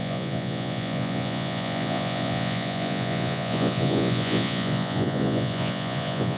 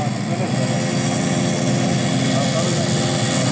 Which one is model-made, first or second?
first